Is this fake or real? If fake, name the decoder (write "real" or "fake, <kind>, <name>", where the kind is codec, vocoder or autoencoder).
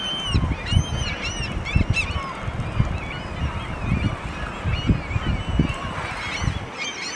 real